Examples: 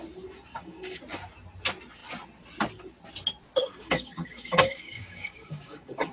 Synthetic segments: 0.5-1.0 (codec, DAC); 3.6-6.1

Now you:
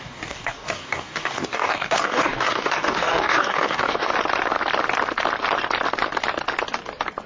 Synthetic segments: 0.0-4.1 (codec, DAC)

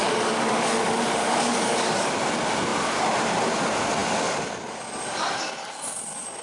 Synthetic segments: 0.0-2.1 (codec, DAC)